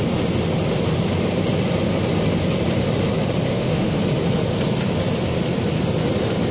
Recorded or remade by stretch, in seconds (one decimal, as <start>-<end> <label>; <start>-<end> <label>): 0.0-3.5 recorded; 3.5-4.0 remade; 4.0-6.5 recorded

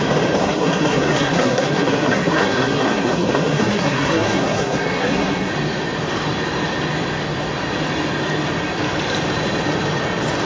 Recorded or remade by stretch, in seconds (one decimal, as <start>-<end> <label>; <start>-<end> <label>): 0.0-0.4 recorded; 0.4-5.5 remade; 5.5-10.5 recorded